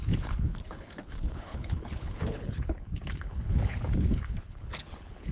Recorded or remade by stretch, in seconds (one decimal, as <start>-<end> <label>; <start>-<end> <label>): 0.0-5.3 remade